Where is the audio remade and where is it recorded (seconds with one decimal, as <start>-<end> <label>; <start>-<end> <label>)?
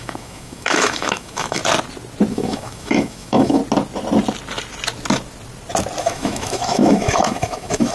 0.0-1.6 remade; 1.6-2.3 recorded; 2.3-3.6 remade; 3.6-6.0 recorded; 6.0-7.9 remade